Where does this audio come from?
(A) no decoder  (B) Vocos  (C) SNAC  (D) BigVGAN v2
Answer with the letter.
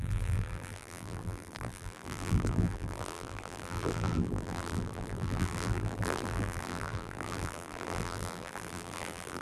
D